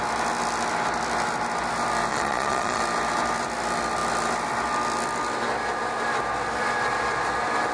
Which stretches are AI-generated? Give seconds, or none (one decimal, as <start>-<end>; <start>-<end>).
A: 2.1-2.8